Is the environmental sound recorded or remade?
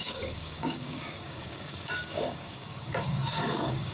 remade